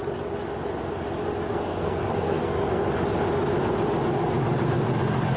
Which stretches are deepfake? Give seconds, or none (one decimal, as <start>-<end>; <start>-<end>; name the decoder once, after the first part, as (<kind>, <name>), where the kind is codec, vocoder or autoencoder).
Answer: 1.5-2.9 (codec, SNAC)